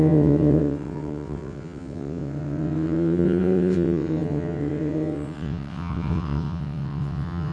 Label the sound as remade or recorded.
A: remade